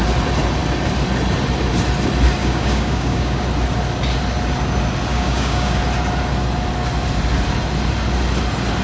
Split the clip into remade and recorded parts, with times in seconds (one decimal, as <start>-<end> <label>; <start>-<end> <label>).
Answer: 0.0-2.4 recorded; 2.4-3.4 remade; 3.4-5.1 recorded; 5.1-5.8 remade; 5.8-8.8 recorded

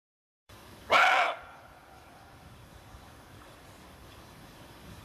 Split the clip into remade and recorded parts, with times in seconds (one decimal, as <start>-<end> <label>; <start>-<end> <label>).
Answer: 0.0-5.0 remade

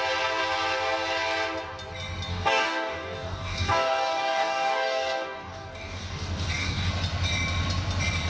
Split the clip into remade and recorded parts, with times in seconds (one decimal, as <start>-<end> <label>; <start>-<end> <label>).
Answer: 0.0-2.3 recorded; 2.3-6.9 remade; 6.9-8.3 recorded

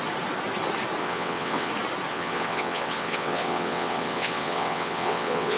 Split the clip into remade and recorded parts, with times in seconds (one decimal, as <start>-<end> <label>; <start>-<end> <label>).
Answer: 0.0-1.0 recorded; 1.0-1.7 remade; 1.7-2.1 recorded; 2.1-5.6 remade

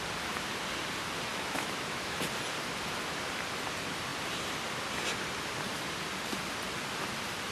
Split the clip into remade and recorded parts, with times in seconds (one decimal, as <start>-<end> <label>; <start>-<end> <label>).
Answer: 0.0-1.3 recorded; 1.3-2.2 remade; 2.2-7.5 recorded

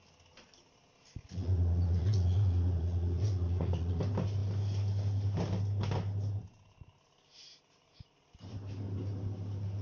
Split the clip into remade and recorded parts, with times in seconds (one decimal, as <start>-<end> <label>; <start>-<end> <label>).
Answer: 0.0-1.2 recorded; 1.2-4.0 remade; 4.0-9.8 recorded

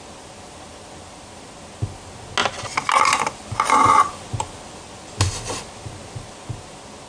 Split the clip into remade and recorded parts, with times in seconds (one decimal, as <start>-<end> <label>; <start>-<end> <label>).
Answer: 0.0-7.1 recorded

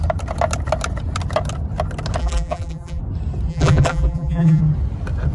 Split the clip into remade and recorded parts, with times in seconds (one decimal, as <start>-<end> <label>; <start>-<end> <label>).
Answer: 0.0-2.2 recorded; 2.2-3.0 remade; 3.0-3.5 recorded; 3.5-4.6 remade; 4.6-5.3 recorded